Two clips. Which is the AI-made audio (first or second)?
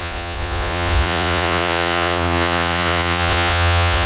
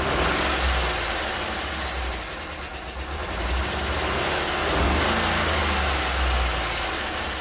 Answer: first